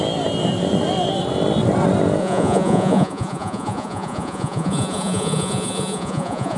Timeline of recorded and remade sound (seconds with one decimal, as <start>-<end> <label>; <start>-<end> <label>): 0.0-2.2 recorded; 2.2-6.6 remade